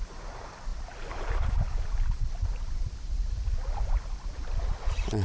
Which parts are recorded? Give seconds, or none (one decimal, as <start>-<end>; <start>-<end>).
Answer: 0.0-5.2